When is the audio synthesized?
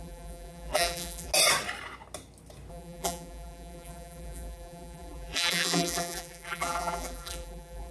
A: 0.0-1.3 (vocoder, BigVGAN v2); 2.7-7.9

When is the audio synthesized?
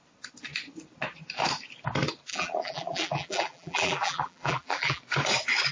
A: 2.3-5.0 (vocoder, BigVGAN v2)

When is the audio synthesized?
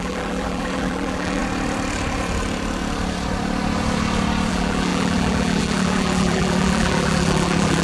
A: 0.0-1.4 (vocoder, BigVGAN v2); 4.5-7.8